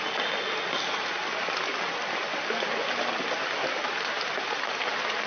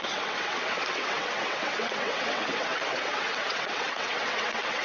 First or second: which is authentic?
first